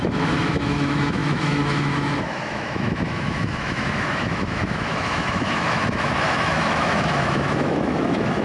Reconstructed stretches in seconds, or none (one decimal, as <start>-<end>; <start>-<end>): 0.0-8.4